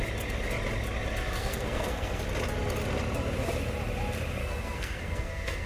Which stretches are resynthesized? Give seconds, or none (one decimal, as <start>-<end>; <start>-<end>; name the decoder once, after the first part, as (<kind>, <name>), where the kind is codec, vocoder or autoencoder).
1.4-2.2 (codec, SNAC); 4.4-5.7